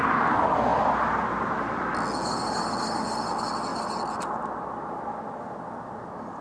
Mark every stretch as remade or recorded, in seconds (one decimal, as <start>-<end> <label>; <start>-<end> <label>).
0.0-6.4 recorded